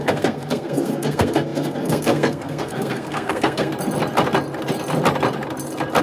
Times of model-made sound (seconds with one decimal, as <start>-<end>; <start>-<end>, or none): 0.0-3.7